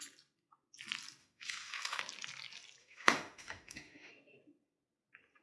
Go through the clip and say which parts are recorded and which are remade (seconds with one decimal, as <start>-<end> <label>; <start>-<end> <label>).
0.0-1.2 recorded; 1.2-2.0 remade; 2.0-2.8 recorded; 2.8-4.1 remade; 4.1-5.4 recorded